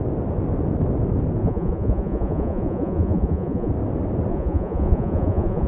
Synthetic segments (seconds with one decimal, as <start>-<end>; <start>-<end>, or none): 1.4-3.7; 4.3-5.7